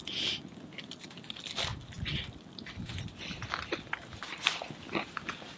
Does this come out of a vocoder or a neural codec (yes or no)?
no